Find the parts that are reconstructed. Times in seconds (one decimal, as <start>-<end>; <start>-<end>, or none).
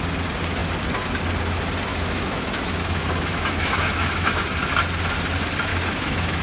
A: 1.9-4.4; 5.7-6.4